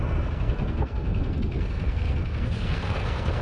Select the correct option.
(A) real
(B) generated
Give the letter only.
B